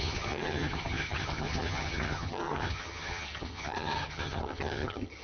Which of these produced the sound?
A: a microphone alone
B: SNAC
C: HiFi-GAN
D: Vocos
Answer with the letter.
C